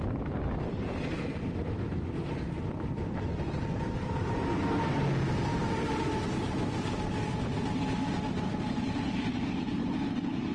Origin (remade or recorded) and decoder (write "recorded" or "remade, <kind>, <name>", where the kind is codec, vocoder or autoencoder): recorded